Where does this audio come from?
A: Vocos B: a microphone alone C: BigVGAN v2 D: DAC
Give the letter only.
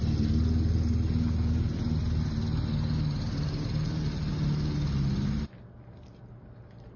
B